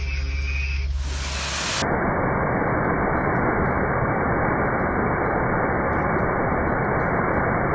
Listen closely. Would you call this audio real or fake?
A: real